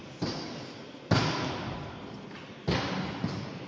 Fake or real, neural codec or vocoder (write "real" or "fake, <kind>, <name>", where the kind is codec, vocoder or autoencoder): real